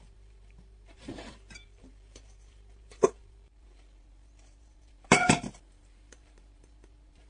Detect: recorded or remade remade